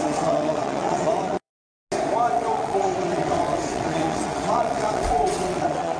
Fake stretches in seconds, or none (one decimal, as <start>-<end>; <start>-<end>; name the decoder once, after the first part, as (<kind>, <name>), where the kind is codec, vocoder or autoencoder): 0.0-1.5 (vocoder, WaveNeXt); 2.3-6.0

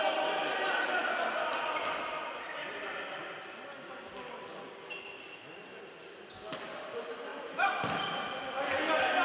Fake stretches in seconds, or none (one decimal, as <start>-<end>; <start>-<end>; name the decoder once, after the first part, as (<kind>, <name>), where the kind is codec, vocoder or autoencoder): 1.0-3.2 (vocoder, BigVGAN v2); 7.3-8.0

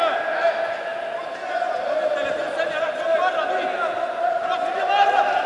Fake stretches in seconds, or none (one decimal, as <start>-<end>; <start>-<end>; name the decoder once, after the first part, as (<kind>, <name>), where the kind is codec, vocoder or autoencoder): none

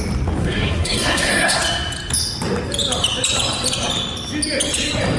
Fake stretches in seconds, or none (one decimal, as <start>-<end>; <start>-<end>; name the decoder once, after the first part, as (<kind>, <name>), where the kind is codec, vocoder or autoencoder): 0.4-1.6 (codec, SNAC)

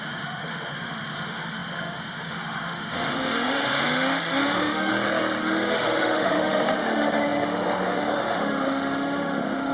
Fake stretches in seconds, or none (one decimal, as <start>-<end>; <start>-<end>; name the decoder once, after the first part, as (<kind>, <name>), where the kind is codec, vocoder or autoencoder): 0.0-4.9 (autoencoder, DAC-VAE); 5.4-9.7